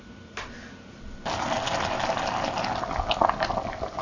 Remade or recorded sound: recorded